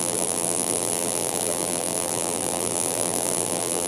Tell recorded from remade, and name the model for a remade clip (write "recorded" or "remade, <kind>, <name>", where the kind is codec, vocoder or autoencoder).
remade, vocoder, BigVGAN v2